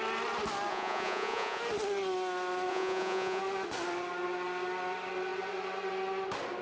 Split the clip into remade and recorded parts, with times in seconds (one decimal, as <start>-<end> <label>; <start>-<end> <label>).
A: 0.0-0.7 recorded; 0.7-1.6 remade; 1.6-2.7 recorded; 2.7-3.4 remade; 3.4-6.6 recorded